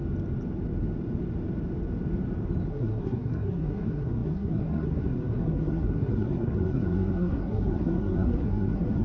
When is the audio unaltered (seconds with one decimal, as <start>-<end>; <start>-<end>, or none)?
0.0-2.7